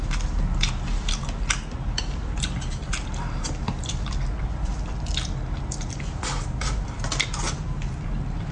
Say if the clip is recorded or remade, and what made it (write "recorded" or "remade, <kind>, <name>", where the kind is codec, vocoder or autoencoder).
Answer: recorded